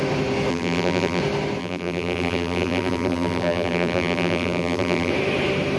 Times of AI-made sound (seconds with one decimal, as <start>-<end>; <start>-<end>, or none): 0.5-1.2; 1.6-5.1